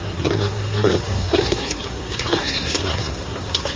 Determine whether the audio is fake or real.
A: fake